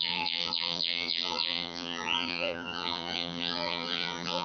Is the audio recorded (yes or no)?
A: no